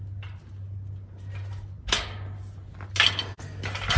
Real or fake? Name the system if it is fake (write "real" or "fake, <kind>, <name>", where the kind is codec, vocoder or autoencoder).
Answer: real